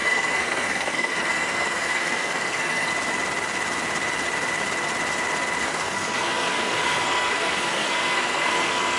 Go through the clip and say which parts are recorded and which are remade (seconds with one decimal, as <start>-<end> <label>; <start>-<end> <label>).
0.0-2.9 remade; 2.9-5.6 recorded; 5.6-9.0 remade